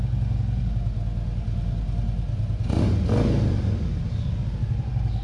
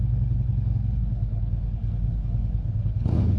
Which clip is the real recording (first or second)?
first